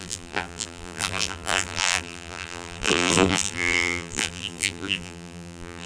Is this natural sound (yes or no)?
no